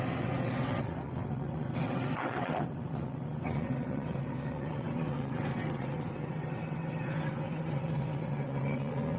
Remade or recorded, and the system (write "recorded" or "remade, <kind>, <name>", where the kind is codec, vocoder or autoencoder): remade, vocoder, WaveNeXt